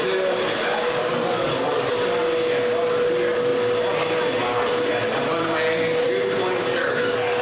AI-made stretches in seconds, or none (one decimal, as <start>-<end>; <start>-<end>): 1.0-1.9; 6.7-7.4